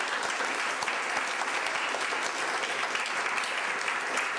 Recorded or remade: recorded